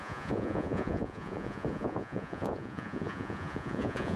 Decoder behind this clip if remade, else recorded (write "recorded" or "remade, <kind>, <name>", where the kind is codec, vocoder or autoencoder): remade, vocoder, Vocos